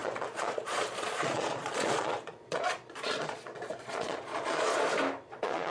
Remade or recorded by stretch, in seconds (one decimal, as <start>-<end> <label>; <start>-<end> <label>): 0.0-4.7 remade; 4.7-5.3 recorded; 5.3-5.7 remade